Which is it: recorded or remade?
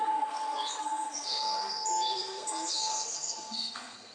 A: remade